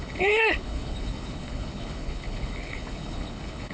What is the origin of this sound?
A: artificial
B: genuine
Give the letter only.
A